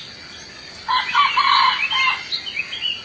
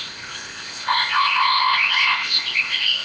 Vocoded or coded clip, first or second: second